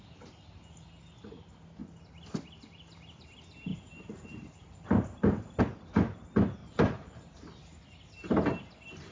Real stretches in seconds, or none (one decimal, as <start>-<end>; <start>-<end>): 0.0-3.7; 5.6-6.6; 7.6-9.1